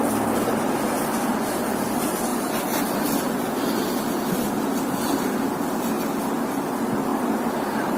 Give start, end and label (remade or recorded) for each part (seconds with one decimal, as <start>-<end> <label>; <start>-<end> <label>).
0.0-2.3 recorded; 2.3-2.8 remade; 2.8-7.1 recorded; 7.1-8.0 remade